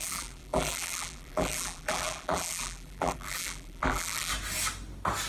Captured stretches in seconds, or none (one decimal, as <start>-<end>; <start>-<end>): 4.3-5.3